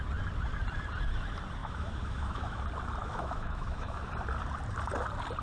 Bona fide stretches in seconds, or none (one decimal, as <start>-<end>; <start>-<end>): 0.0-1.6; 2.6-3.0; 4.1-5.4